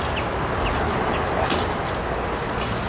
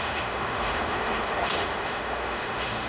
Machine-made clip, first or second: second